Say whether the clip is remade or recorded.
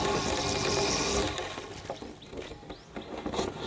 recorded